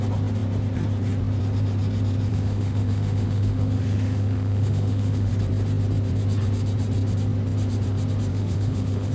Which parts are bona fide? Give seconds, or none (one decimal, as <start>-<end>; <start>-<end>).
0.0-2.3; 5.3-8.3